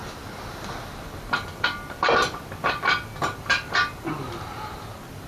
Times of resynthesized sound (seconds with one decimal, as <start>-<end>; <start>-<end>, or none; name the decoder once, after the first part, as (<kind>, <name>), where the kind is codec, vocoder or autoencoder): 0.0-5.3 (vocoder, BigVGAN v2)